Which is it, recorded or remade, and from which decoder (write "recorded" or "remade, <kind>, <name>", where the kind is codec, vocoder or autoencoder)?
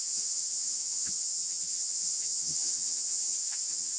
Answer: remade, vocoder, HiFi-GAN